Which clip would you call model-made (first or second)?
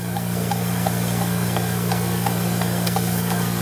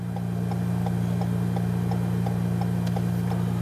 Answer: first